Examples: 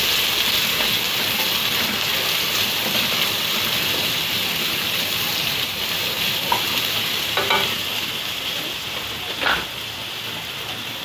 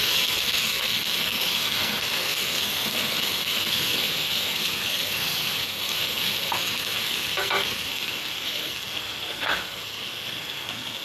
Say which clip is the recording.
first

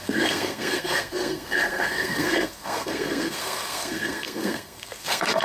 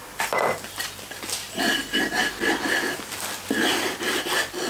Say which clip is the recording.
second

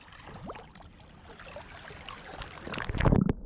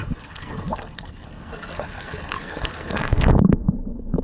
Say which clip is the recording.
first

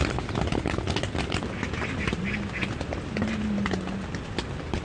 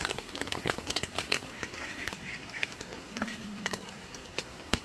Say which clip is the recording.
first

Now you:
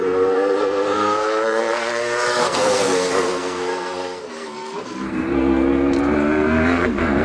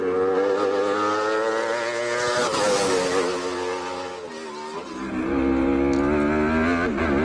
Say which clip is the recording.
second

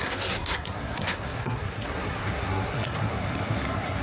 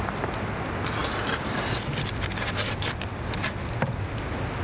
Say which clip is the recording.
second